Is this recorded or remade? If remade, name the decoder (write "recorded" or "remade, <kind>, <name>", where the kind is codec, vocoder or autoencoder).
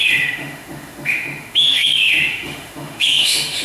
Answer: remade, autoencoder, DAC-VAE